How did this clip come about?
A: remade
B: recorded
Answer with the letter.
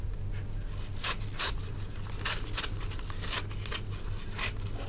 B